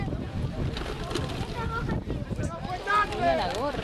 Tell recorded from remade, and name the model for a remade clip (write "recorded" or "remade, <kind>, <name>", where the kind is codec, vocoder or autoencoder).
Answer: recorded